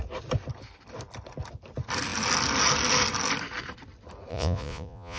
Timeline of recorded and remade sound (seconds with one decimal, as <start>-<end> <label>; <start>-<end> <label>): 0.0-4.3 recorded; 4.3-5.2 remade